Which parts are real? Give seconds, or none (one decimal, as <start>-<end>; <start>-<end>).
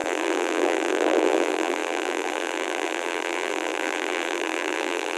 none